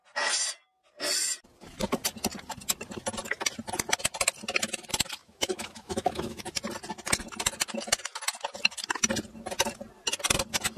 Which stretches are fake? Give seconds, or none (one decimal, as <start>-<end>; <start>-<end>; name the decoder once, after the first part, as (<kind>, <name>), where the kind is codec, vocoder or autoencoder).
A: 5.2-6.5 (autoencoder, DAC-VAE)

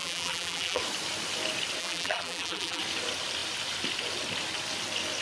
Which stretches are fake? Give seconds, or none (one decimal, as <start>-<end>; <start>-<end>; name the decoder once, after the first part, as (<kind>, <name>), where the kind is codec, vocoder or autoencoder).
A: 0.0-0.8 (vocoder, BigVGAN v2); 1.8-2.8

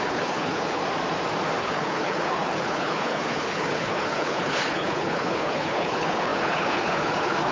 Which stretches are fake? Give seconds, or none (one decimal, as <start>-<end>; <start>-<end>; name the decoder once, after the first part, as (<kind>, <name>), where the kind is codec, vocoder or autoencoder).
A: 0.0-0.8 (codec, HILCodec); 1.6-7.5

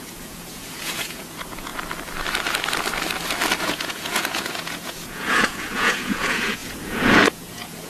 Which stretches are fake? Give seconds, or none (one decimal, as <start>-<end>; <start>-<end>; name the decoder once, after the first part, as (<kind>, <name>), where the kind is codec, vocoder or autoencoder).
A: 0.0-1.7 (vocoder, Vocos); 3.6-7.9

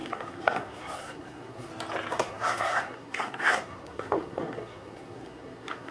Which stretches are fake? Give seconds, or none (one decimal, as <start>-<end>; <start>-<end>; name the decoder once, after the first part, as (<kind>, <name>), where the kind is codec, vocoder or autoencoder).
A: 0.0-1.7 (codec, SNAC); 2.1-5.9